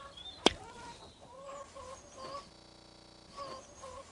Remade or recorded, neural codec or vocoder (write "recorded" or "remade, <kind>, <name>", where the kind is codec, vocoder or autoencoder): recorded